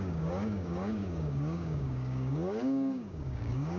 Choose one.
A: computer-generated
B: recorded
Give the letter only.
A